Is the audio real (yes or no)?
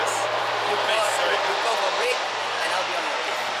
no